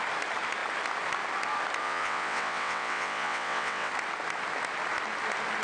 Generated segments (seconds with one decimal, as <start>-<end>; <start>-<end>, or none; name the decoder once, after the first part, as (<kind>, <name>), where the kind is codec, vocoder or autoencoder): 1.8-3.9 (vocoder, WaveNeXt)